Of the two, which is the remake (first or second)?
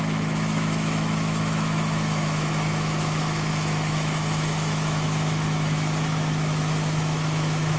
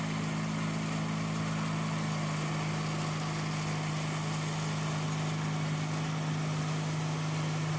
first